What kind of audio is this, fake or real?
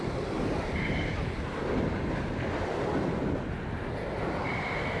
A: real